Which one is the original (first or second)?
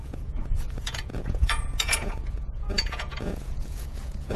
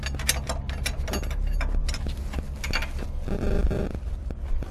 second